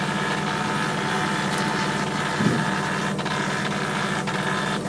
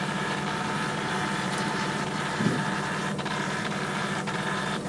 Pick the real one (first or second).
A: first